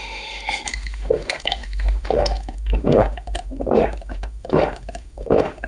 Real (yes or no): no